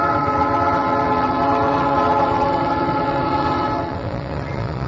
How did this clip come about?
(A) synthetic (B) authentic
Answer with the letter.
A